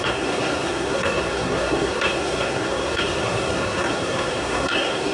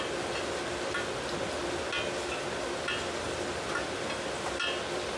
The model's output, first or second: first